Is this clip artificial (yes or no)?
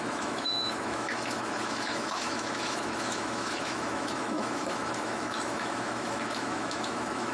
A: yes